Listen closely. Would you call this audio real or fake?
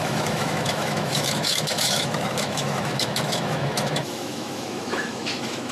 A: fake